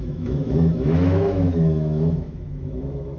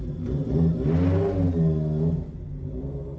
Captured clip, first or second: second